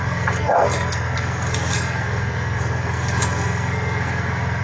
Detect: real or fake fake